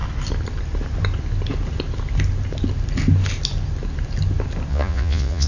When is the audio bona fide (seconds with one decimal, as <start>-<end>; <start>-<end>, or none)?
0.0-4.7